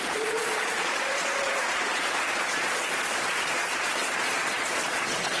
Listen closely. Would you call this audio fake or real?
fake